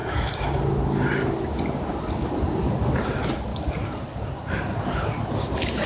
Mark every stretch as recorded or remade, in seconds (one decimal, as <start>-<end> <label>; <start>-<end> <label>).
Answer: 0.0-0.6 remade; 0.6-5.9 recorded